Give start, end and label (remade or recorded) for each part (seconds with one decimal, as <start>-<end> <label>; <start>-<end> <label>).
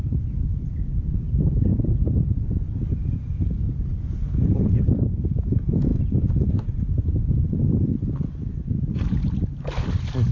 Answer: 0.0-5.9 remade; 5.9-10.3 recorded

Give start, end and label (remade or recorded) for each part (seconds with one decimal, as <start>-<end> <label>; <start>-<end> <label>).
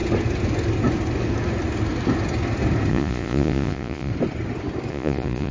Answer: 0.0-2.9 recorded; 2.9-4.1 remade; 4.1-4.9 recorded; 4.9-5.5 remade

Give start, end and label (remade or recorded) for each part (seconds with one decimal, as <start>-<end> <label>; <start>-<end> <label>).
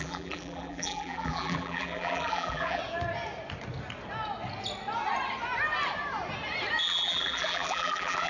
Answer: 0.0-2.8 remade; 2.8-6.8 recorded; 6.8-8.3 remade